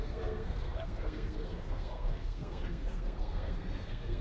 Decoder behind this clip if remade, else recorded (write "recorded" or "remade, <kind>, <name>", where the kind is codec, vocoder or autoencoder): remade, codec, SNAC